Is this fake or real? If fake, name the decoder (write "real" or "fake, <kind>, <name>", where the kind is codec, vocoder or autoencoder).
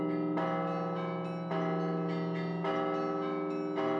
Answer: real